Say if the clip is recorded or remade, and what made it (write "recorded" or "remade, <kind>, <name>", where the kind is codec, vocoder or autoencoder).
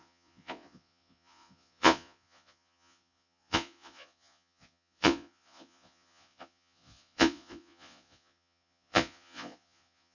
remade, vocoder, Vocos